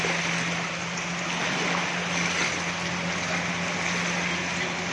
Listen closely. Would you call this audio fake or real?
real